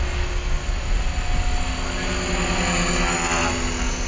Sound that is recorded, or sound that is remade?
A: recorded